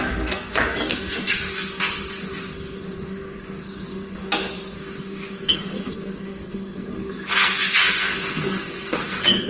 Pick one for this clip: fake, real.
fake